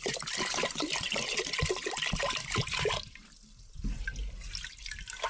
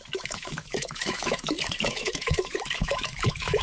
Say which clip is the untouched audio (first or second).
first